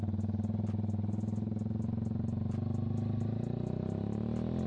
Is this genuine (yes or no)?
yes